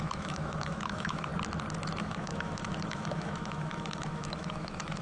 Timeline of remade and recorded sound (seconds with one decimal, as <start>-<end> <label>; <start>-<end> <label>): 0.0-1.3 remade; 1.3-2.0 recorded; 2.0-5.0 remade